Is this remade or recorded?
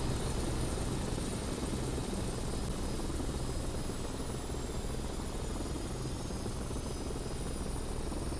recorded